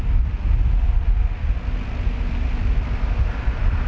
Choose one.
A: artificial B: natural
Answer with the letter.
B